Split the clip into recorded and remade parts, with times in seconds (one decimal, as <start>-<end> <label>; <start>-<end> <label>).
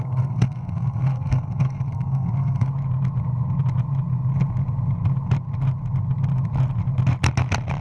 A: 0.0-2.7 remade; 2.7-7.8 recorded